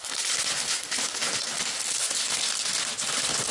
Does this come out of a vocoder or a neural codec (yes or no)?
no